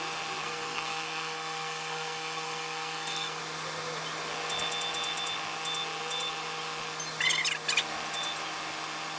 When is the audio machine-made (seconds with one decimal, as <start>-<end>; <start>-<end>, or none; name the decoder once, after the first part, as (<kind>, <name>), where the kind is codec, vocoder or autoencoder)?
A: 0.4-3.4 (codec, SNAC)